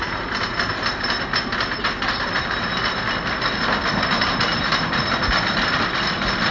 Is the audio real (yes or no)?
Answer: yes